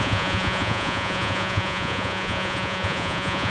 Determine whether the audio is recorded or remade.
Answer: remade